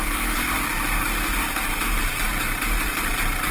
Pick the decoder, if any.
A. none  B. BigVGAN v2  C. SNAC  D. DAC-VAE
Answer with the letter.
B